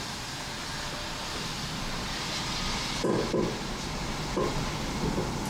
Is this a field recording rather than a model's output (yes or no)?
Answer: yes